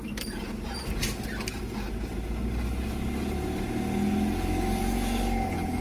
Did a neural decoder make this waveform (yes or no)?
no